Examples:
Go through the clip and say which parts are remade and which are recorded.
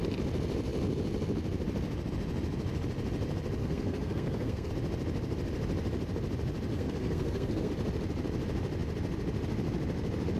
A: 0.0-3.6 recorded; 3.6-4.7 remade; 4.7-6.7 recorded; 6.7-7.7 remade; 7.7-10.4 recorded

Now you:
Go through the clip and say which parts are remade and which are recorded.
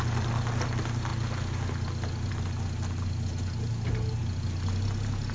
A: 0.0-5.3 recorded